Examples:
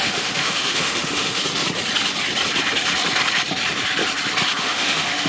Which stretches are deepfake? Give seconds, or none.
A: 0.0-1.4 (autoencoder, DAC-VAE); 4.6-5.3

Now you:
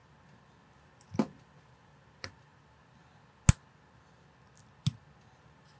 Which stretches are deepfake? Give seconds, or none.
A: none